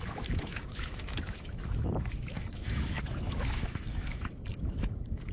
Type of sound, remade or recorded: remade